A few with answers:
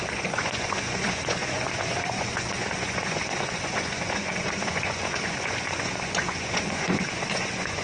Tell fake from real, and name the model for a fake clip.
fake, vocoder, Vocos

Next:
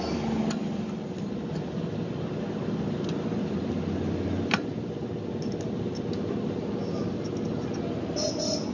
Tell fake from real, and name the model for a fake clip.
real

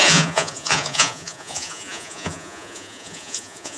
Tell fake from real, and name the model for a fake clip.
fake, vocoder, Vocos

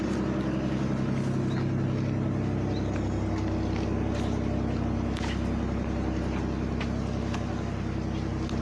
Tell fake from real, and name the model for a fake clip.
real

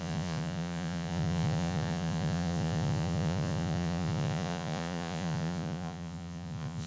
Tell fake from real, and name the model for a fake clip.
fake, vocoder, Vocos